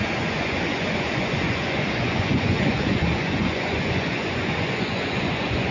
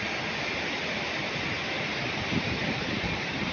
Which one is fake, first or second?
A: first